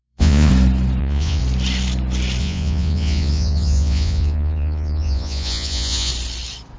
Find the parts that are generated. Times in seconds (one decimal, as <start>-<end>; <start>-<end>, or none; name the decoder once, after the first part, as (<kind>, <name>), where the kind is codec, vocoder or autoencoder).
0.0-0.5 (vocoder, Vocos); 1.0-1.4; 2.4-6.1